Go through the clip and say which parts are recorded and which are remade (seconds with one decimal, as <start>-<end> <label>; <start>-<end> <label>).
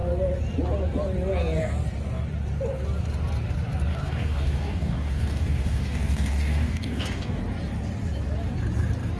0.0-3.9 recorded; 3.9-7.4 remade; 7.4-9.2 recorded